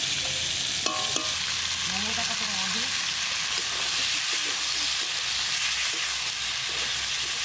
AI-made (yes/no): no